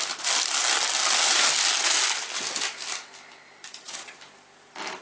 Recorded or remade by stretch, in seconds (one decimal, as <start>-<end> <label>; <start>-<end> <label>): 0.0-5.0 recorded